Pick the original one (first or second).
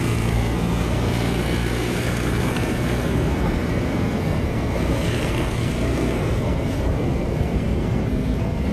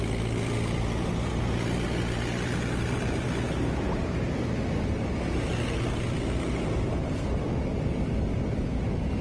second